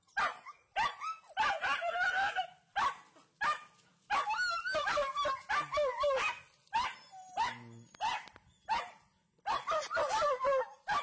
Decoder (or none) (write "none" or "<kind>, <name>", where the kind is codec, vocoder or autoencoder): none